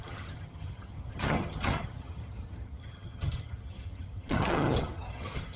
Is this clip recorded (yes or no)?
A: no